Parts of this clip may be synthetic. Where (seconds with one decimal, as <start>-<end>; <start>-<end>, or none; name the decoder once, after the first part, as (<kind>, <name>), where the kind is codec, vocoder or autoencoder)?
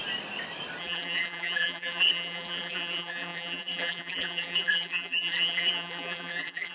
0.8-6.7 (vocoder, BigVGAN v2)